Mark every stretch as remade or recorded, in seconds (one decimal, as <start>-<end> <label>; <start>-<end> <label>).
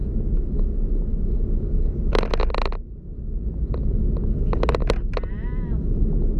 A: 0.0-6.4 recorded